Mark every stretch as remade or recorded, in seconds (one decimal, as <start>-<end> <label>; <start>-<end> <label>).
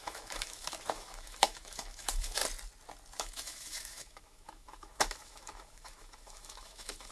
0.0-2.4 remade; 2.4-3.2 recorded; 3.2-7.1 remade